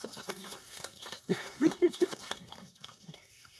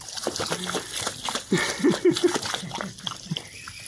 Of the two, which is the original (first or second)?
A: second